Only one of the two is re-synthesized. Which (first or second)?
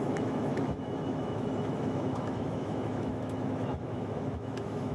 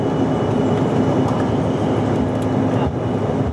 first